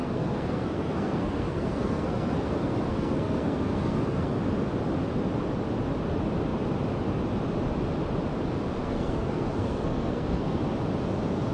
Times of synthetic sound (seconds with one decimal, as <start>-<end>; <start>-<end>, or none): 0.0-4.4; 8.8-10.6